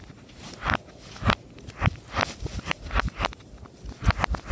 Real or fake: real